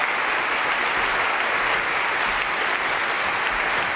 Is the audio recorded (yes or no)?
yes